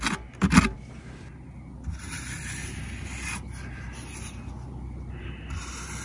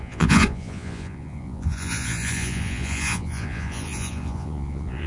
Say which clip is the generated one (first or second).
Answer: second